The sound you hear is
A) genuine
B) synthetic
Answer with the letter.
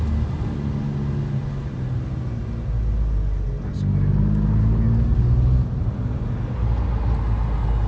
A